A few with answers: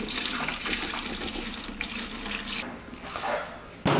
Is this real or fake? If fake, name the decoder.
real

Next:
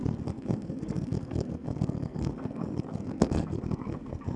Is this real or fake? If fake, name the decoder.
fake, codec, SNAC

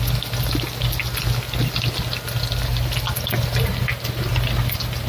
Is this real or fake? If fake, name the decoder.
real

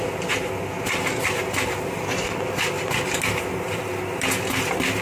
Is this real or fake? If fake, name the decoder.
real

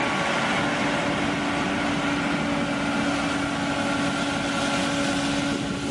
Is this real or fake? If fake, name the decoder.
real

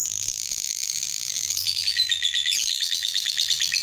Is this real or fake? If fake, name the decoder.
fake, vocoder, BigVGAN v2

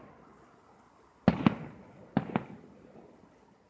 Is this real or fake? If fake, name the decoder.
real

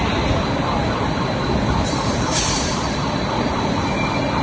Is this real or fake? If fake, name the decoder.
real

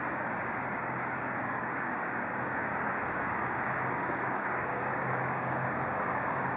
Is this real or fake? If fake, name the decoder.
fake, codec, DAC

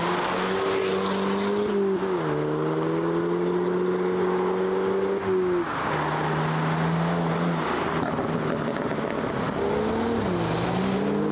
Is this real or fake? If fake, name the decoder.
real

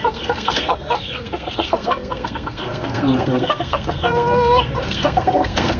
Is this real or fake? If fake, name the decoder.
fake, codec, SNAC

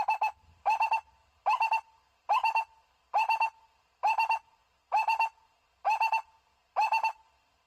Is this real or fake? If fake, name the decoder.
real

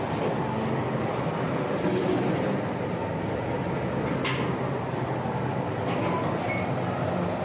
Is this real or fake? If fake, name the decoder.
real